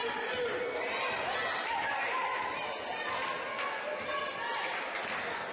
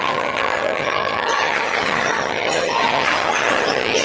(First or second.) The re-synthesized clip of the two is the second